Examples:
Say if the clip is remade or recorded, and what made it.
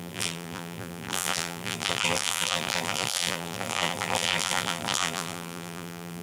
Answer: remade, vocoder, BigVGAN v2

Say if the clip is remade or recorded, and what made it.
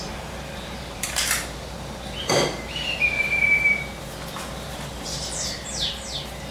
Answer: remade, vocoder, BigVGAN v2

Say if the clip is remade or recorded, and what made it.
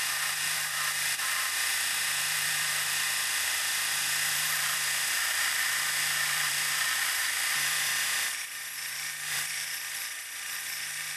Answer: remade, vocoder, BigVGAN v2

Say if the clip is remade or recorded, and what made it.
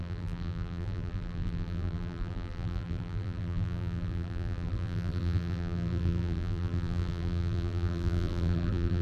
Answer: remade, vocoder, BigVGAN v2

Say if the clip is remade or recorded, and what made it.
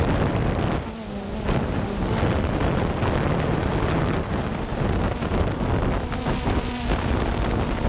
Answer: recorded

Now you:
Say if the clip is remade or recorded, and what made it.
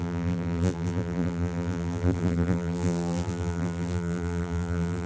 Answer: remade, vocoder, BigVGAN v2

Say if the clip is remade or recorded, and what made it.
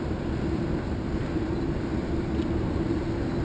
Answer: recorded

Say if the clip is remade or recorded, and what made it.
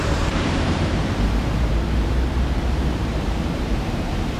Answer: remade, vocoder, BigVGAN v2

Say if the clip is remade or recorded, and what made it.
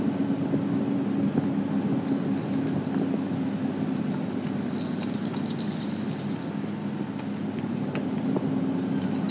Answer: recorded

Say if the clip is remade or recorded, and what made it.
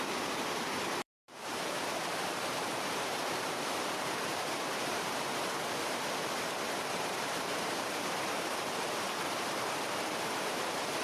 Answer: remade, vocoder, BigVGAN v2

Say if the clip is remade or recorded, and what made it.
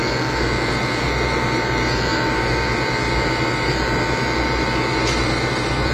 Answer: remade, vocoder, BigVGAN v2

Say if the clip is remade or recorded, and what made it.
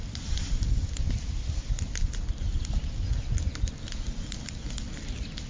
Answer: recorded